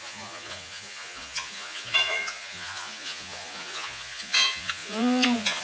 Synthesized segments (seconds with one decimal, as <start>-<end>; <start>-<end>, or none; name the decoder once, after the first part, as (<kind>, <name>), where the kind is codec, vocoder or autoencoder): 0.0-5.6 (vocoder, Vocos)

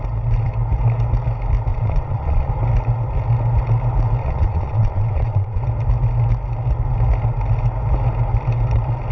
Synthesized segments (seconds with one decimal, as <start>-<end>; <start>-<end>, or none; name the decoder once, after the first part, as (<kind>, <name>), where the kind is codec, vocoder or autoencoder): 1.7-2.5 (vocoder, Vocos); 4.2-5.6

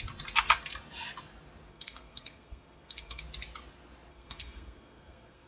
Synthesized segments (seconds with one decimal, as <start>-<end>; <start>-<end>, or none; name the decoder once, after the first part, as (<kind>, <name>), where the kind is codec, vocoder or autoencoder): 1.7-3.2 (codec, SNAC); 4.1-5.5

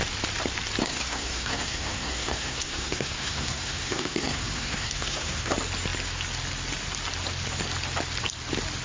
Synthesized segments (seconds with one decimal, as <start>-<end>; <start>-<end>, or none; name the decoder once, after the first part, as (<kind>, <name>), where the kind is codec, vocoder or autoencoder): 0.8-5.5 (codec, SNAC)

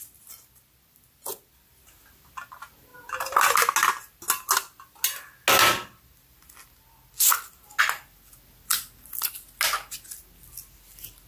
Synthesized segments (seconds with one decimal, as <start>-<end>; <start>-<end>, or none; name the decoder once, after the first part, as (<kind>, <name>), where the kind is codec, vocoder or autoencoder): none

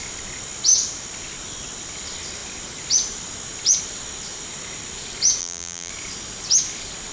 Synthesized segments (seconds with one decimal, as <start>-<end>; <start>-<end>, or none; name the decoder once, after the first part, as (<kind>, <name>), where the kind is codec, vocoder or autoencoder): 5.4-5.9 (vocoder, BigVGAN v2)